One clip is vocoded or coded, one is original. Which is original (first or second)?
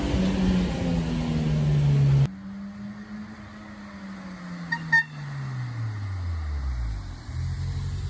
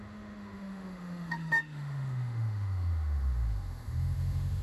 first